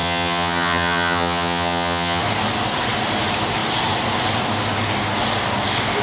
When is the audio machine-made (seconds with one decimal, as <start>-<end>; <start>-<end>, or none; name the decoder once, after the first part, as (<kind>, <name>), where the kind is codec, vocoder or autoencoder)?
0.0-2.2 (vocoder, HiFi-GAN)